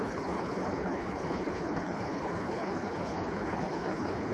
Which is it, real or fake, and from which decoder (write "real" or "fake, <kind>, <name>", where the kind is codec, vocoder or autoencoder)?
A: fake, codec, HILCodec